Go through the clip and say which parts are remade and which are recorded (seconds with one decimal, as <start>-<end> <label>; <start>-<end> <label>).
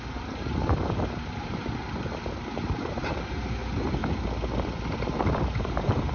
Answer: 0.0-1.6 remade; 1.6-2.3 recorded; 2.3-4.0 remade; 4.0-4.8 recorded; 4.8-6.1 remade